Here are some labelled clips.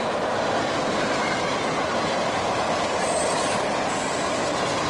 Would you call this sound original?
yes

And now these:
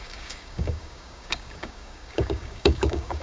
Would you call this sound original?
no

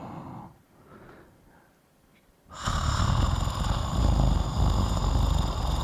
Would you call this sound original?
yes